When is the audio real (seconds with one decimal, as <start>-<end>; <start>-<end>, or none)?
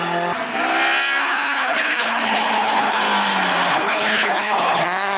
0.0-1.2; 3.0-3.7; 4.8-5.2